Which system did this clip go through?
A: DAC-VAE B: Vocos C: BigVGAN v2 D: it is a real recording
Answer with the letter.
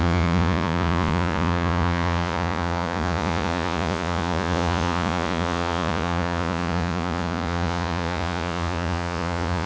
B